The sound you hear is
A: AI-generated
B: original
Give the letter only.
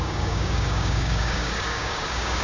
A